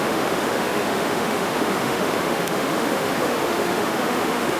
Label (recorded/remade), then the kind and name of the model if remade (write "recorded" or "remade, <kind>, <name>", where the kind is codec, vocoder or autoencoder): remade, autoencoder, DAC-VAE